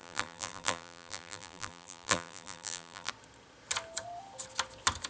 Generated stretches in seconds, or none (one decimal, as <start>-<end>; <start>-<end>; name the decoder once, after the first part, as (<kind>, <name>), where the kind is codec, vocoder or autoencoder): 0.0-3.1 (vocoder, BigVGAN v2)